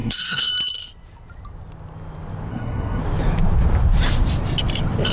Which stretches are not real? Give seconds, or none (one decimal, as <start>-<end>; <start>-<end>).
0.0-0.5; 2.5-3.0